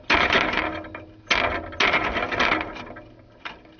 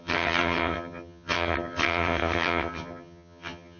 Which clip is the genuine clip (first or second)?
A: first